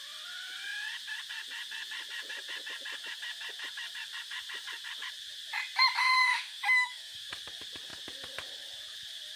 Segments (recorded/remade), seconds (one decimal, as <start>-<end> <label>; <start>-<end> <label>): 0.0-6.0 recorded; 6.0-7.3 remade; 7.3-9.4 recorded